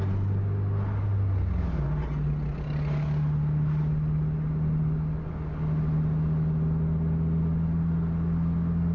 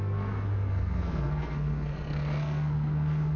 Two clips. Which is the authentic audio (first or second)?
first